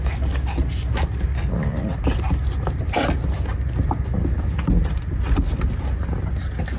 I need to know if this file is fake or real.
real